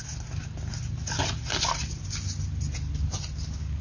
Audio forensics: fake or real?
real